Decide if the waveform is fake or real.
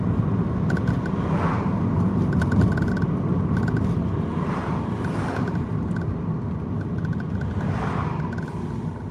real